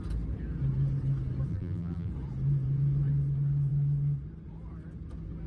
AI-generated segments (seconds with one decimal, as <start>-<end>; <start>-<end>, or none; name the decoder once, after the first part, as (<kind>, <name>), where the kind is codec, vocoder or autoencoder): 1.5-2.1 (vocoder, BigVGAN v2)